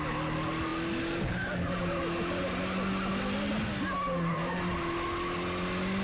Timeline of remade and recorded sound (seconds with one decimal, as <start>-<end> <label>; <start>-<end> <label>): 0.0-6.0 recorded

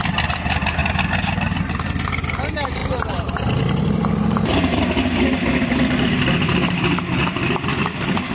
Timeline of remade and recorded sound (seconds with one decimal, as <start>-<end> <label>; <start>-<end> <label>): 0.0-2.8 recorded; 2.8-4.8 remade; 4.8-8.3 recorded

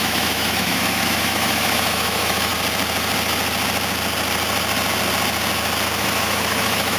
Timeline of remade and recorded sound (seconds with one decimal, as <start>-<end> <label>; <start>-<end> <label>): 0.0-2.5 remade; 2.5-6.0 recorded; 6.0-7.0 remade